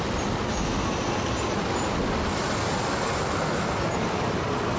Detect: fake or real real